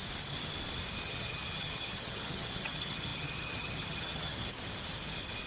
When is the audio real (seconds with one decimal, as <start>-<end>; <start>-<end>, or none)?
0.0-1.0; 4.6-5.5